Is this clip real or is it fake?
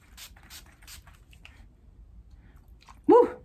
real